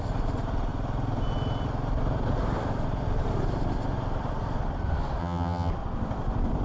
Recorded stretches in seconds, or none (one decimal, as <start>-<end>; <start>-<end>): 0.0-5.2; 5.7-6.6